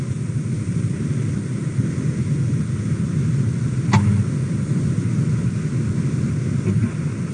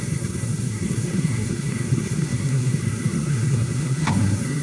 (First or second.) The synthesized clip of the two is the second